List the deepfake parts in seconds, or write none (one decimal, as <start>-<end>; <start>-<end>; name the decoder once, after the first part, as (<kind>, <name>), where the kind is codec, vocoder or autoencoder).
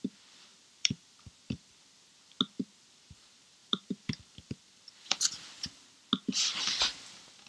0.5-1.2 (vocoder, BigVGAN v2); 3.6-4.6